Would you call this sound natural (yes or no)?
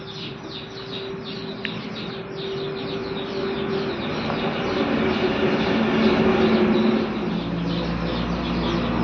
yes